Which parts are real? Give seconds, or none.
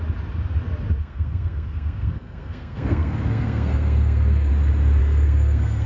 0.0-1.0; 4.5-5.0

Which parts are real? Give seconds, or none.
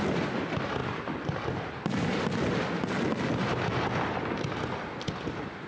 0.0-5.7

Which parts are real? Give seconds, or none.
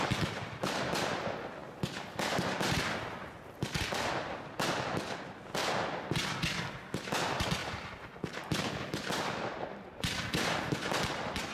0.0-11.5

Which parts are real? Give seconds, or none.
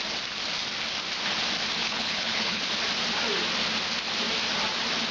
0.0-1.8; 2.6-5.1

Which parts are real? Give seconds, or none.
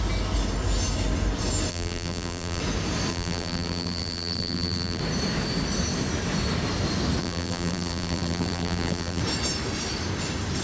0.0-1.7; 2.6-3.1; 5.0-7.2; 9.2-10.6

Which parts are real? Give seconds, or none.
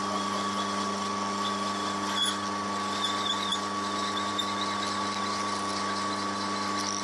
0.0-7.0